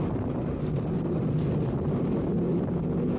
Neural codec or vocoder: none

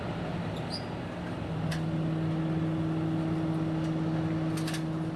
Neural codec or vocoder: none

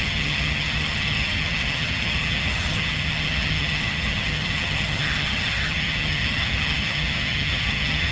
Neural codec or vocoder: vocoder, HiFi-GAN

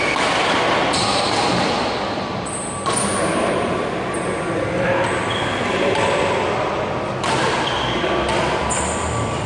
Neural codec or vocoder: none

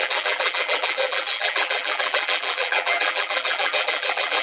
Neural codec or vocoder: vocoder, BigVGAN v2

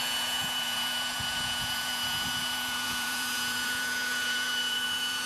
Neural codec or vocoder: vocoder, Vocos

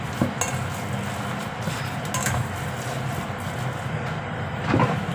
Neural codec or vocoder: none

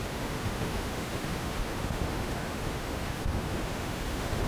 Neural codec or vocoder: autoencoder, DAC-VAE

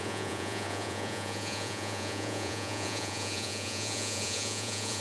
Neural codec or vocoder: vocoder, Vocos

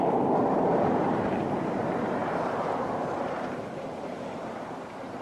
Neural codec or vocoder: vocoder, BigVGAN v2